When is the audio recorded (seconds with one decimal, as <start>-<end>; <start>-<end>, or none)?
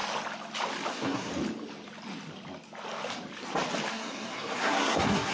0.0-0.9; 1.3-3.9